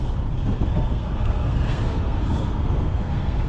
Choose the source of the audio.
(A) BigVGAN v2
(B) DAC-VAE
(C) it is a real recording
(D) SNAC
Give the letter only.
D